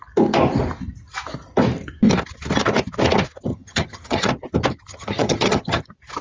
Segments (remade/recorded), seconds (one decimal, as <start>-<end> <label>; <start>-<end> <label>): 0.0-3.5 recorded; 3.5-4.3 remade; 4.3-4.9 recorded; 4.9-5.8 remade; 5.8-6.2 recorded